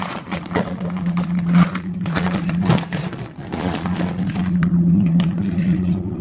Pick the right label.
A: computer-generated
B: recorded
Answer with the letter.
A